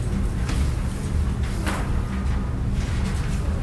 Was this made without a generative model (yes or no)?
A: yes